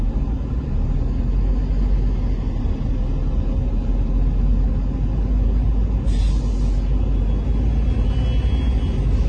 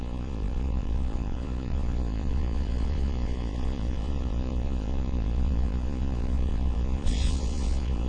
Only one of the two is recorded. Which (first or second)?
first